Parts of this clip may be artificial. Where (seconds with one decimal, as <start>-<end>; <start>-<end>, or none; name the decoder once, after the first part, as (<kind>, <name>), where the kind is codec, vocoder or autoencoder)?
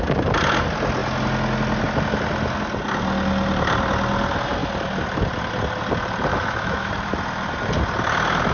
6.3-6.9 (autoencoder, DAC-VAE)